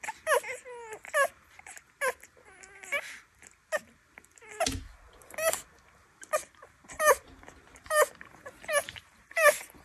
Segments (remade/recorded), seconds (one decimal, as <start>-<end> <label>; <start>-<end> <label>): 0.0-8.8 recorded; 8.8-9.8 remade